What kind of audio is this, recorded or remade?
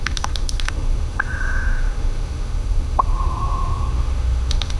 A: remade